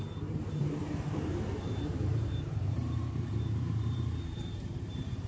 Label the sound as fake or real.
fake